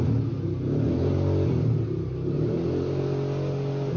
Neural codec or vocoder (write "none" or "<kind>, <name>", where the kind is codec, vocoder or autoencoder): none